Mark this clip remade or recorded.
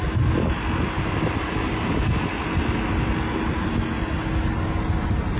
recorded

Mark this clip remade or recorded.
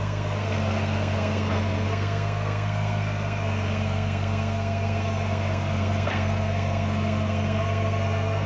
remade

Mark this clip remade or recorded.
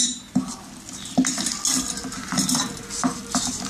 recorded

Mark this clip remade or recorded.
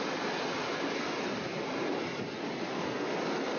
recorded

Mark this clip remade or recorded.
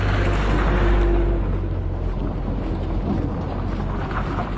recorded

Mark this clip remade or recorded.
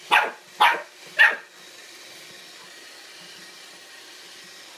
recorded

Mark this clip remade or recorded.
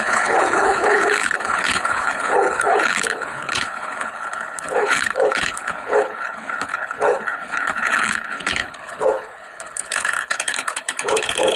remade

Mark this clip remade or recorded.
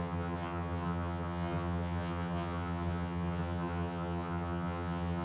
remade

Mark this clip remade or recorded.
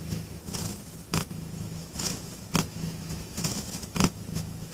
remade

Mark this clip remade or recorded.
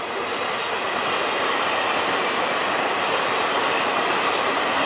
recorded